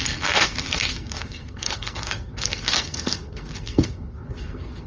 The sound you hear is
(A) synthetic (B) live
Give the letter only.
A